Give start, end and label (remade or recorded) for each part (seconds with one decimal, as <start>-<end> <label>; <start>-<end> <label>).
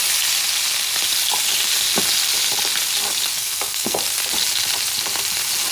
0.0-3.3 recorded; 3.3-4.0 remade; 4.0-5.7 recorded